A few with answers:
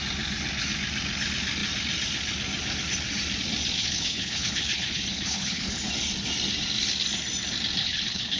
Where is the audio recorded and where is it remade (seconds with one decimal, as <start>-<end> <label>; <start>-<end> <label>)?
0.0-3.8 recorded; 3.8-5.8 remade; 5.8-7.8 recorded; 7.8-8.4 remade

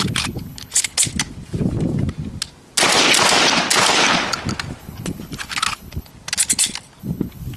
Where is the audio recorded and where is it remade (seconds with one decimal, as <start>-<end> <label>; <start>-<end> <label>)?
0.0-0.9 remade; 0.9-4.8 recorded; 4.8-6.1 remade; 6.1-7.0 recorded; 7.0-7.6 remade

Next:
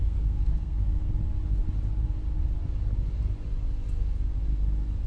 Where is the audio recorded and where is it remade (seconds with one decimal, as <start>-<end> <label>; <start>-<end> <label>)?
0.0-1.1 remade; 1.1-5.1 recorded

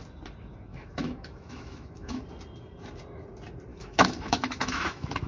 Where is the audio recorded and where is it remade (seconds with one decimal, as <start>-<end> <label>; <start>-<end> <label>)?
0.0-0.7 recorded; 0.7-2.2 remade; 2.2-3.7 recorded; 3.7-5.3 remade

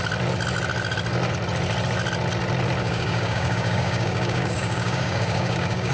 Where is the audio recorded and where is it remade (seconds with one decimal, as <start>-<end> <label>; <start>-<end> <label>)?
0.0-2.8 recorded; 2.8-5.9 remade

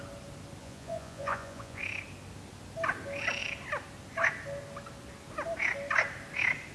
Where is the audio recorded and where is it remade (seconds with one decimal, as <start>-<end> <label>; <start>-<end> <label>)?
0.0-0.6 recorded; 0.6-1.8 remade; 1.8-6.7 recorded

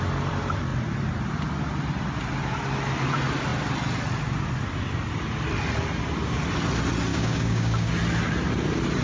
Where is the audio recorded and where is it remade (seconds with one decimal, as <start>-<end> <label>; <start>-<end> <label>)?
0.0-7.1 recorded; 7.1-7.9 remade; 7.9-9.0 recorded

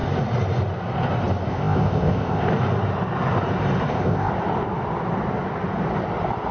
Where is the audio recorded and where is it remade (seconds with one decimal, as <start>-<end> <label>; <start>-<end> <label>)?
0.0-1.5 recorded; 1.5-2.5 remade; 2.5-3.9 recorded; 3.9-4.3 remade; 4.3-6.5 recorded